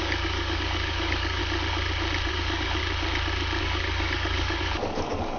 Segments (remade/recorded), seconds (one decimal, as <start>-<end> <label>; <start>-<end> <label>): 0.0-1.4 remade; 1.4-2.3 recorded; 2.3-2.8 remade; 2.8-3.6 recorded; 3.6-5.4 remade